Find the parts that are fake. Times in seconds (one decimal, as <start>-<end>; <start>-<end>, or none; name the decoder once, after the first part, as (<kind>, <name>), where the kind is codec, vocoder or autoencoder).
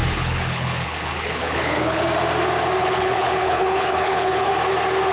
0.0-2.0 (codec, HILCodec); 2.8-4.5